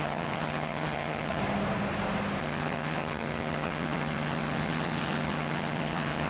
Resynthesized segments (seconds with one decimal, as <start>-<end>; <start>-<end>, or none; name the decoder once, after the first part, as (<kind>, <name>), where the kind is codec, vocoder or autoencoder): 0.0-1.4 (vocoder, HiFi-GAN); 2.4-6.3